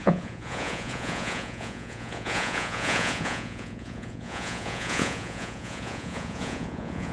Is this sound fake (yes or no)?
yes